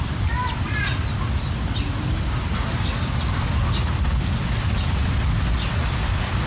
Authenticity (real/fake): real